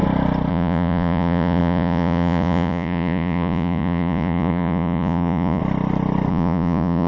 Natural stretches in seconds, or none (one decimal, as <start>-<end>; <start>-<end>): 0.0-0.5; 5.6-6.3